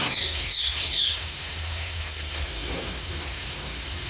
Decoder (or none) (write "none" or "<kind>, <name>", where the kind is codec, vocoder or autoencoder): codec, SNAC